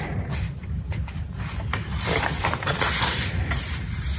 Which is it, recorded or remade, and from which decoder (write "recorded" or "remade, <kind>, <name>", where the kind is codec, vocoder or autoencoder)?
recorded